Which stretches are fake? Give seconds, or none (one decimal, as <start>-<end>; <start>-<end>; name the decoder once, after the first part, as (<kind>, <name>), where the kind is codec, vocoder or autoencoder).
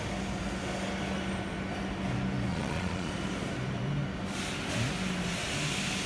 2.5-3.1 (vocoder, Vocos)